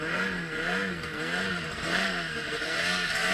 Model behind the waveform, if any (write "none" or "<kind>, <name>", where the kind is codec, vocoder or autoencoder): codec, SNAC